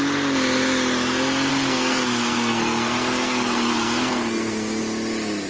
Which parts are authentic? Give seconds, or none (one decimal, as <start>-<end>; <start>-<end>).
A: 0.0-1.5; 4.8-5.5